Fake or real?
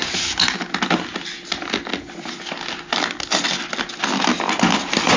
real